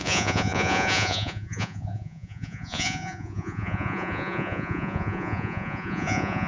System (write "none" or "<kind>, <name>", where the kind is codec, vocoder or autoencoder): vocoder, Vocos